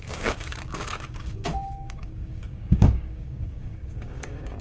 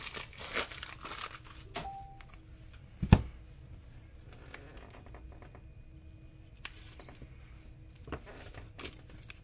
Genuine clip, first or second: second